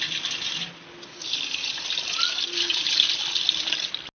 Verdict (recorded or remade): recorded